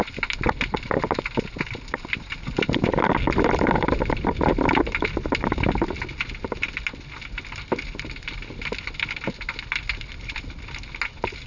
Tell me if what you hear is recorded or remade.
recorded